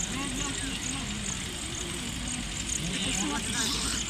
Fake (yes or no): no